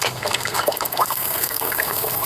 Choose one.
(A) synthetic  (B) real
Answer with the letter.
A